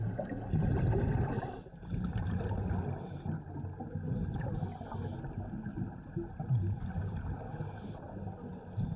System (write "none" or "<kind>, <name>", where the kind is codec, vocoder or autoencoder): none